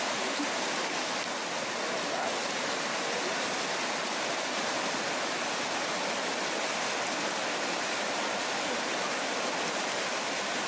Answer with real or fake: real